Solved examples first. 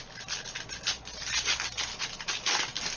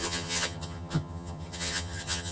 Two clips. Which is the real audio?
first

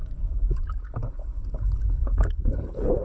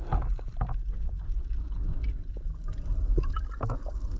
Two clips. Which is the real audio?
second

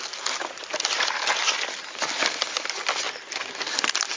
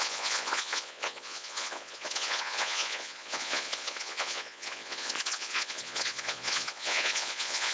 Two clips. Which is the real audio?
first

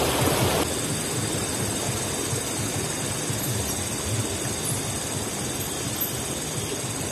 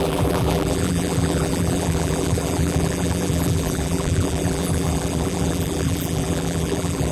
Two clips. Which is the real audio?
first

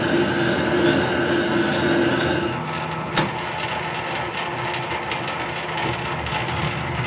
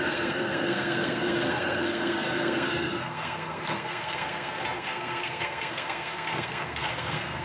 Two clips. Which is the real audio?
first